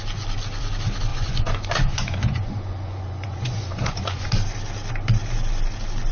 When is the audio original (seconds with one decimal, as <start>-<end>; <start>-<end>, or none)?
0.0-1.1; 4.3-6.1